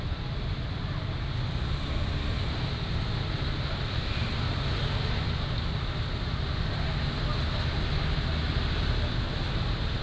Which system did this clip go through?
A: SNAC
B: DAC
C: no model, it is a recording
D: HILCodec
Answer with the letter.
C